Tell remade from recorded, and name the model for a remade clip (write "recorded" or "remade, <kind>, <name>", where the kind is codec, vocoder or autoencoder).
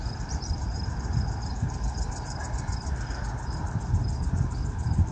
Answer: remade, vocoder, BigVGAN v2